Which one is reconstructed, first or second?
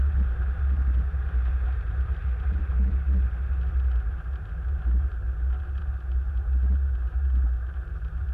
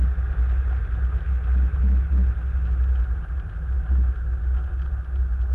first